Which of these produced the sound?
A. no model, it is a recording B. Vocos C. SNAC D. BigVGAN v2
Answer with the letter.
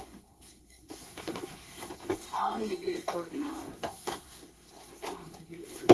C